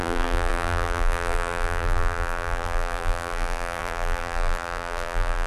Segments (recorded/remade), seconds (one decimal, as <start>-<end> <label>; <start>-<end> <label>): 0.0-5.5 remade